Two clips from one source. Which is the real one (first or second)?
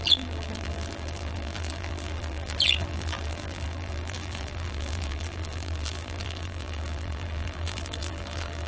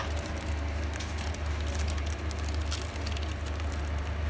second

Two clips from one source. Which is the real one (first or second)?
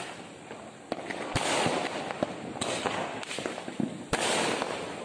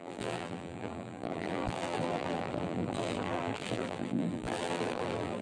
first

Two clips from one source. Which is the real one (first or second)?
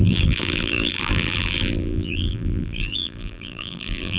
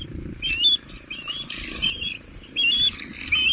second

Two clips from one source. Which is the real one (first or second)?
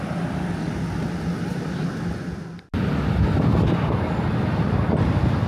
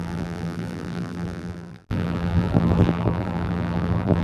first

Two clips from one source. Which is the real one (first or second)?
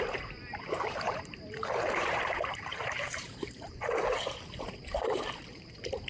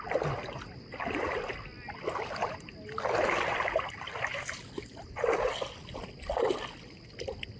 second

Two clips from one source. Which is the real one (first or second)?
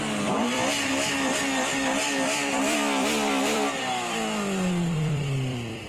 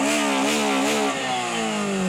second